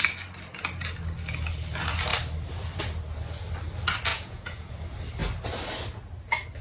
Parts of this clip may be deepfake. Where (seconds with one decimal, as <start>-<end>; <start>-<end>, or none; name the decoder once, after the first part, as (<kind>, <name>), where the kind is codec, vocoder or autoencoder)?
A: 4.1-4.7 (vocoder, Vocos)